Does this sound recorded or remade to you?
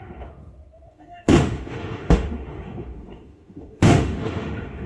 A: remade